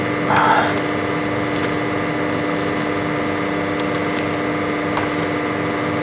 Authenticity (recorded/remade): recorded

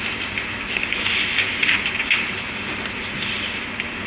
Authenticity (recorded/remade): recorded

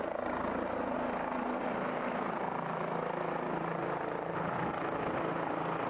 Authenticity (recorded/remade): recorded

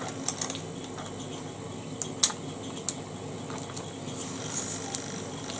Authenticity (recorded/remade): recorded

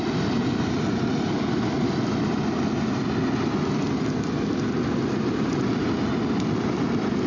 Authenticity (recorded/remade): recorded